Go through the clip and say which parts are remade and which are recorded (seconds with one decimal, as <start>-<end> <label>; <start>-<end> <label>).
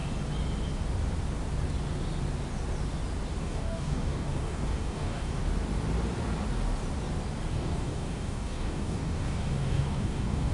0.0-3.4 recorded; 3.4-5.4 remade; 5.4-7.5 recorded; 7.5-10.5 remade